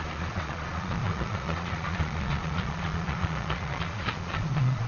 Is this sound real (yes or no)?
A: no